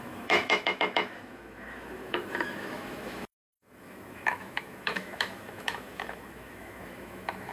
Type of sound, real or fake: fake